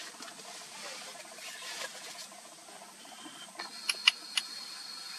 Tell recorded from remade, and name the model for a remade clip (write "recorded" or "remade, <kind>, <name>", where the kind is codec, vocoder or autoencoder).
recorded